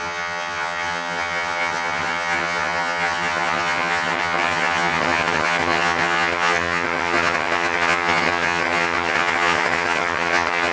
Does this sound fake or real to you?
fake